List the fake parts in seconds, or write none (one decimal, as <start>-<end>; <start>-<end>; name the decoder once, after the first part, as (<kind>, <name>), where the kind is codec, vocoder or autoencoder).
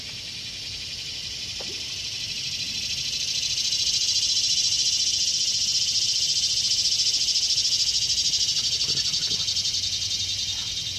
none